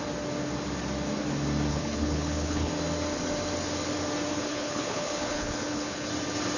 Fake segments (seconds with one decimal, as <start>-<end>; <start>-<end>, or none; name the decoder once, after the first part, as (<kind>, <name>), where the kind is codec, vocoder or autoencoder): 1.7-2.7 (codec, HILCodec); 4.3-6.1